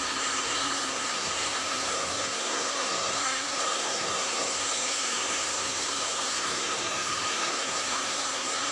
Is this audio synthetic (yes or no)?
yes